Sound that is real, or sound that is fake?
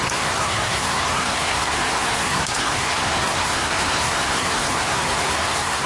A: fake